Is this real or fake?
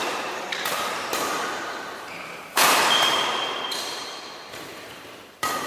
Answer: fake